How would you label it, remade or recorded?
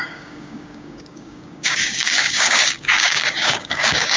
remade